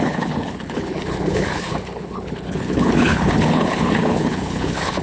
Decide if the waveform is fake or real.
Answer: fake